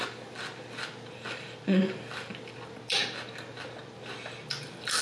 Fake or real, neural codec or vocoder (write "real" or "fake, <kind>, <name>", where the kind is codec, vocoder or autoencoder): real